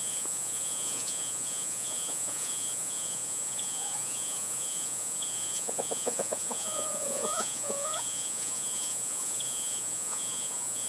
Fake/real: fake